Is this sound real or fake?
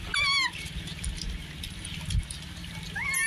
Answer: real